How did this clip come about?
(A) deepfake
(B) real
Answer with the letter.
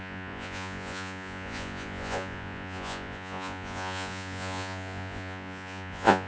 A